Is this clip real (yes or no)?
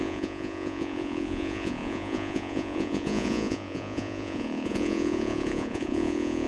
no